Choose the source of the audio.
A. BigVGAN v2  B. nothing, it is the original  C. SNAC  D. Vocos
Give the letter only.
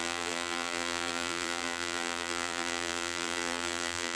A